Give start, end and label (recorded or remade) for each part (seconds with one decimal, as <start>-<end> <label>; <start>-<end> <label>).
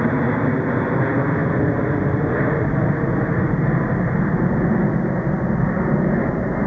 0.0-6.7 recorded